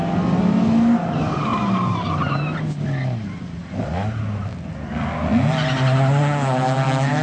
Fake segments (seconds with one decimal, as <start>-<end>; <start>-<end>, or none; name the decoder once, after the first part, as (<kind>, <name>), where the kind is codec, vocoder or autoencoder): 1.5-2.1 (vocoder, BigVGAN v2)